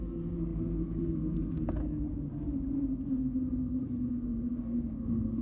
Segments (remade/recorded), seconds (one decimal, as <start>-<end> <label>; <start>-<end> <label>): 0.0-1.8 remade; 1.8-3.1 recorded; 3.1-5.4 remade